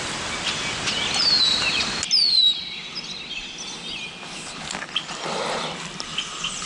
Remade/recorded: recorded